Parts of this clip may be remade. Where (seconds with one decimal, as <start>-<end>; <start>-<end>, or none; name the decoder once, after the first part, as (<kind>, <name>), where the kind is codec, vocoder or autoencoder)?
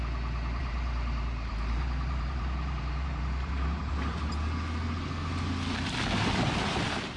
0.6-4.3 (vocoder, BigVGAN v2)